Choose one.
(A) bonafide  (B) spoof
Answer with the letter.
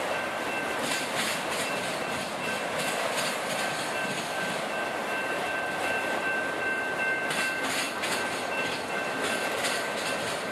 A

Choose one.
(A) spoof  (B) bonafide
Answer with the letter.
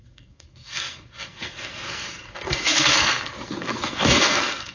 A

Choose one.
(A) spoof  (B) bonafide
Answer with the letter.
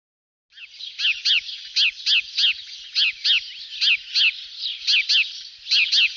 B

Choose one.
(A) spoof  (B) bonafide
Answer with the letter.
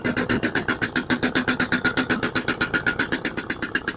A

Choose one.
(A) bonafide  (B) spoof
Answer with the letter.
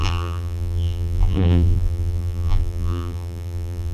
B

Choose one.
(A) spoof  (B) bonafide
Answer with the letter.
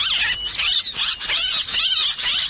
B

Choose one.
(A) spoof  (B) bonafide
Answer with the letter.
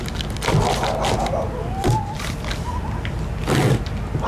B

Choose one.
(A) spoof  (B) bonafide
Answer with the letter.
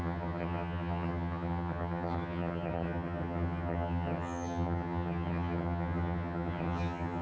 A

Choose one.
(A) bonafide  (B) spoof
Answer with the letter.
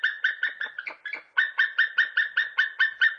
A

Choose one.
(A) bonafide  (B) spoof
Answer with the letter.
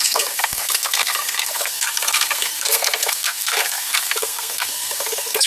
B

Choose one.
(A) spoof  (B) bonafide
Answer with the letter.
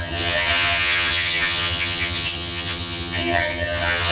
A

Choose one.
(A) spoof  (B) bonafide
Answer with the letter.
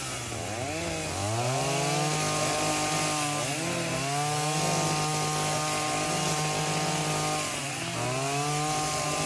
B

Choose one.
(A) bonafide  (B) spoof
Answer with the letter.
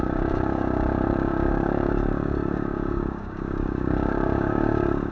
B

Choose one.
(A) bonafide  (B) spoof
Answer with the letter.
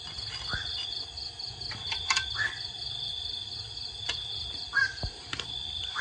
A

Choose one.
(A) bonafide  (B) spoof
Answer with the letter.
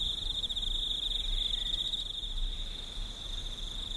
A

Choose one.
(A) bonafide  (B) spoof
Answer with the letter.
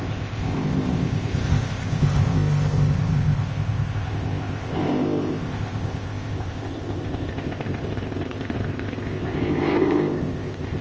B